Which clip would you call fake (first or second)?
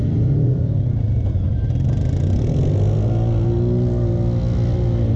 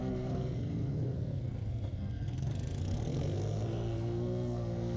second